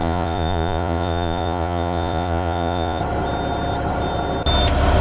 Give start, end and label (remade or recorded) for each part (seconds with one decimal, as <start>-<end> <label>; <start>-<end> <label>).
0.0-3.0 remade; 3.0-5.0 recorded